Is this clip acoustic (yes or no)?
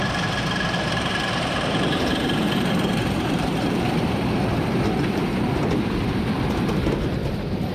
no